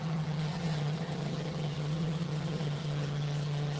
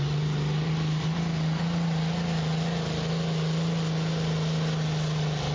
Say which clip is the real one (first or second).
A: second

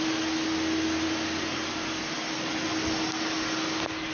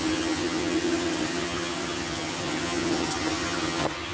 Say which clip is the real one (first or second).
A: first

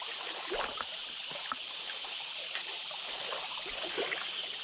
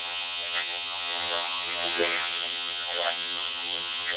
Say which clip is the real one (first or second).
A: first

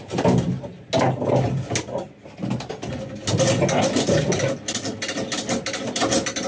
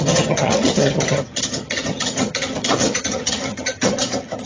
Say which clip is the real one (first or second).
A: first